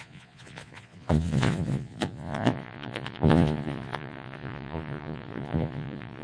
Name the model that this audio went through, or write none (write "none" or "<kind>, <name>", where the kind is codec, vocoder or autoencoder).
vocoder, Vocos